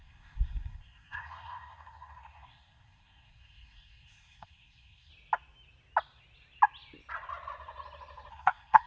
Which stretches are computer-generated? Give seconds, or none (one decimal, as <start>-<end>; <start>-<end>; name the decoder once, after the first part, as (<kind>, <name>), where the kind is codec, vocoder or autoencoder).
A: 0.0-5.1 (codec, SNAC); 8.3-8.9